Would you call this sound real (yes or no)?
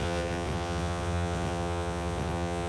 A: no